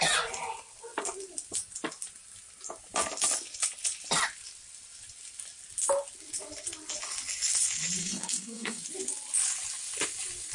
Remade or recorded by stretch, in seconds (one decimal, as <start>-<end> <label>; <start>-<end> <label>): 0.0-8.0 recorded; 8.0-8.8 remade; 8.8-10.5 recorded

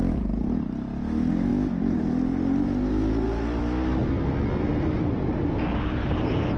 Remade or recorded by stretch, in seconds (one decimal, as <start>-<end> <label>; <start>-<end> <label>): 0.0-6.6 recorded

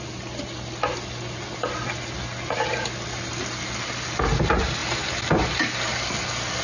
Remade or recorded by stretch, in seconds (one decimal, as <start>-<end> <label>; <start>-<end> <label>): 0.0-6.6 recorded

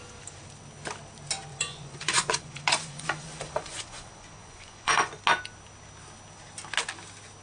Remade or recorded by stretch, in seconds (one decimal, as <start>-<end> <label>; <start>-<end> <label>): 0.0-1.5 recorded; 1.5-5.2 remade; 5.2-7.4 recorded